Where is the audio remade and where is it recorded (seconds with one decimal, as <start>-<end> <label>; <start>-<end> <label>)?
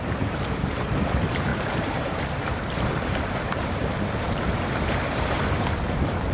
0.0-6.3 remade